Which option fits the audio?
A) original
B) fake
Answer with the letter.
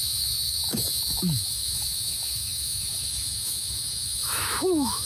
B